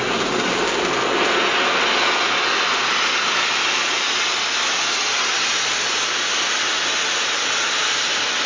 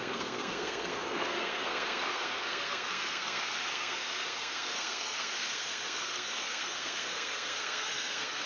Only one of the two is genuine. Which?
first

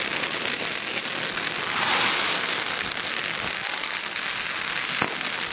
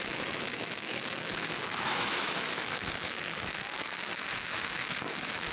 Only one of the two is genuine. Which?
first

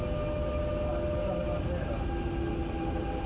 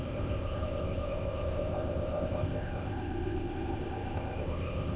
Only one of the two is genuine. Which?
first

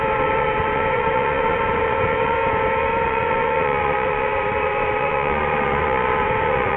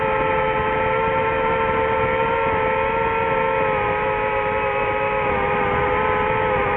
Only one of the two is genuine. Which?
second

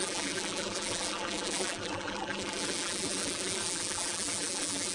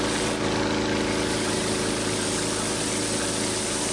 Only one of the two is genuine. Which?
second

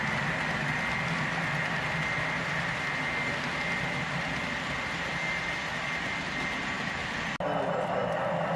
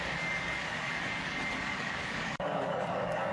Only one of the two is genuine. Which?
first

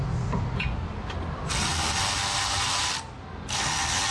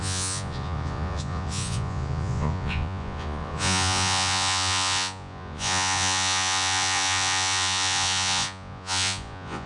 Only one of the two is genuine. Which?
first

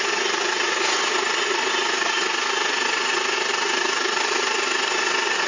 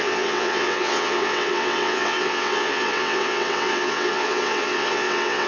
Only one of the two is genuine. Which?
first